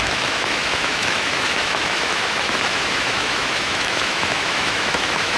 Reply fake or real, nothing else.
fake